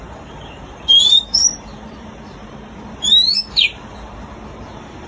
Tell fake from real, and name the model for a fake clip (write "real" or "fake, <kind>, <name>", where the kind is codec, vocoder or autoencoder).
fake, vocoder, BigVGAN v2